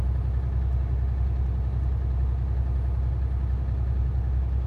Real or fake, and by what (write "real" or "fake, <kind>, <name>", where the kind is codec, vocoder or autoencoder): real